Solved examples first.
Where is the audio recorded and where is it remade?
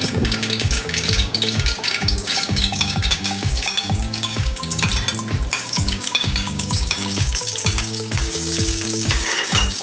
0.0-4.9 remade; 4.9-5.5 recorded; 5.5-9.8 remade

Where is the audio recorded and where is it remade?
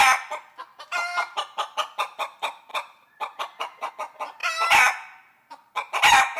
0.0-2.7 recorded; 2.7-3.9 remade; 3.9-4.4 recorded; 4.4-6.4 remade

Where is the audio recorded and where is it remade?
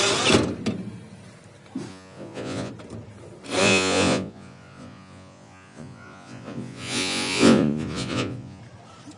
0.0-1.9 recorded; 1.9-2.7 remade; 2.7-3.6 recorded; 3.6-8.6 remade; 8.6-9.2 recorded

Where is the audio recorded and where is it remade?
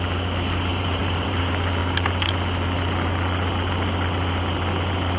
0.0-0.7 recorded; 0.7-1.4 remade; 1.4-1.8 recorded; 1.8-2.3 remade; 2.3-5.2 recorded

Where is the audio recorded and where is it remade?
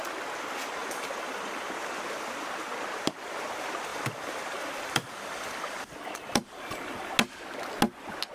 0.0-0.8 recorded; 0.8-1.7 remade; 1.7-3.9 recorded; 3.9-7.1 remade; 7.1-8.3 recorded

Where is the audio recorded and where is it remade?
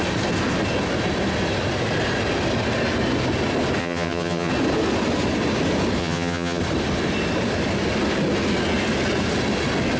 0.0-3.8 recorded; 3.8-4.5 remade; 4.5-6.0 recorded; 6.0-6.6 remade; 6.6-10.0 recorded